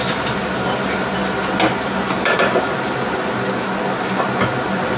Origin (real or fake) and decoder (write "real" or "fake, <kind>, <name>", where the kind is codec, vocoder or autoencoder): real